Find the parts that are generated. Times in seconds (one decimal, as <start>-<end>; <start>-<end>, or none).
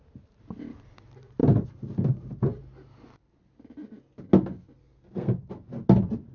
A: 4.8-5.4